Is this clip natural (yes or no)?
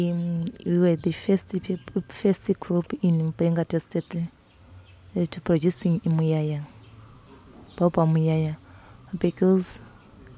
yes